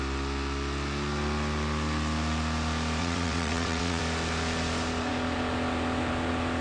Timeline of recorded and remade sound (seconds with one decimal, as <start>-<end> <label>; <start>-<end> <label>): 0.0-3.0 recorded; 3.0-4.0 remade; 4.0-6.6 recorded